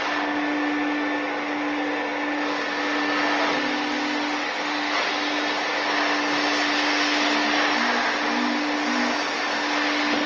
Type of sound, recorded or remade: recorded